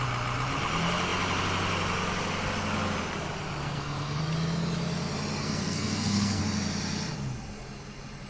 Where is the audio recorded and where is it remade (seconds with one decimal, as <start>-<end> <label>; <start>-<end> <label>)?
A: 0.0-3.6 recorded; 3.6-4.2 remade; 4.2-5.4 recorded; 5.4-6.4 remade; 6.4-8.3 recorded